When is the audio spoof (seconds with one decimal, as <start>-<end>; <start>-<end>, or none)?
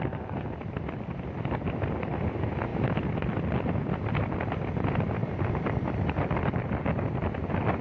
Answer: 0.0-5.2; 5.9-7.8